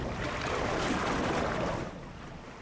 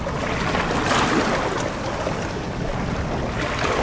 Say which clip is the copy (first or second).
first